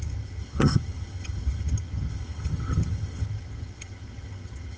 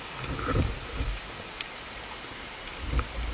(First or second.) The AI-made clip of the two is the first